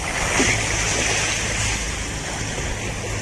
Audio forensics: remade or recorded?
recorded